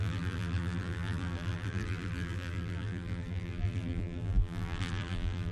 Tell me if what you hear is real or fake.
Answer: fake